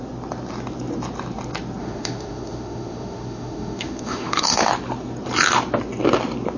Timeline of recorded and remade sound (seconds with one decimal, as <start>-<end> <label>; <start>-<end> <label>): 0.0-1.8 recorded; 1.8-4.7 remade; 4.7-6.6 recorded